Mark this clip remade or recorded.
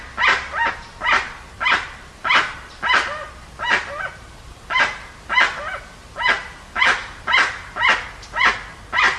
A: recorded